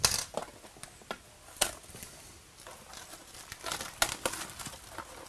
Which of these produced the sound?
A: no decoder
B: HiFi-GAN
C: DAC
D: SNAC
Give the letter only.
A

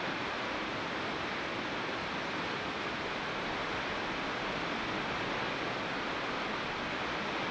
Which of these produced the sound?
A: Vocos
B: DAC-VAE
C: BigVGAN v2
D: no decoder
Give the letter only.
D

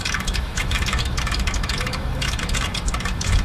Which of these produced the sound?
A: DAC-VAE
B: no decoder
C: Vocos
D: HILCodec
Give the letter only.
A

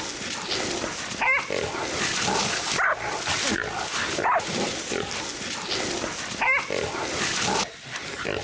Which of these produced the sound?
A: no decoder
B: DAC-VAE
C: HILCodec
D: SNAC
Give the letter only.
A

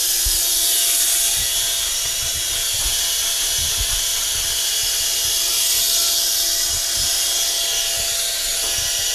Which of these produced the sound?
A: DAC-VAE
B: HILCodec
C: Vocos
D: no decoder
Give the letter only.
D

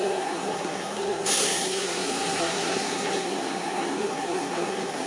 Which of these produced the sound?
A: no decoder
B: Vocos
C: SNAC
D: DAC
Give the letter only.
C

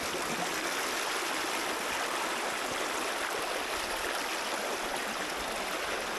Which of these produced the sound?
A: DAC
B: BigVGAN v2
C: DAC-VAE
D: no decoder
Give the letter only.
D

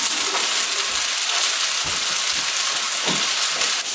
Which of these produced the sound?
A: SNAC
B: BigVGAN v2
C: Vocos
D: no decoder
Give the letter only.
D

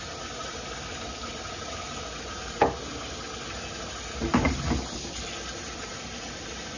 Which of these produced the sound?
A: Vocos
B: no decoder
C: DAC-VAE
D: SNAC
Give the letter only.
B